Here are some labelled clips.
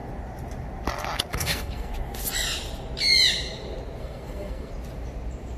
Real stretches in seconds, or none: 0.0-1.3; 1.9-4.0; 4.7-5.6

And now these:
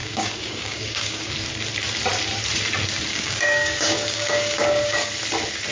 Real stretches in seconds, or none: 1.3-3.1; 5.1-5.7

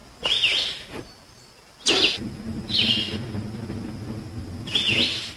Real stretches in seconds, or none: 1.5-5.4

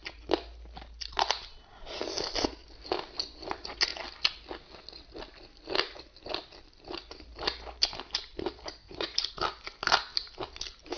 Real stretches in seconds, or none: 0.0-8.8; 9.3-11.0

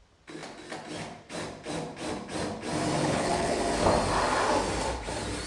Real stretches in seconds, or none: 0.0-3.0; 3.6-5.5